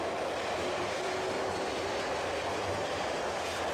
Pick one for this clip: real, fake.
real